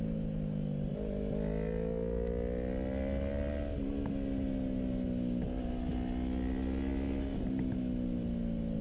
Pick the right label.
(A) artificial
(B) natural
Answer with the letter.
B